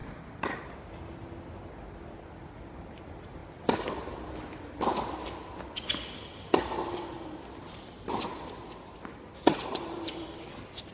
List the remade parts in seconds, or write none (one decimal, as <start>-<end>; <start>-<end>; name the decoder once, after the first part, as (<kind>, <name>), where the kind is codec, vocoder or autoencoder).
none